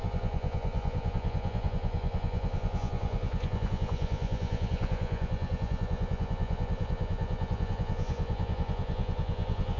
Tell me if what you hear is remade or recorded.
remade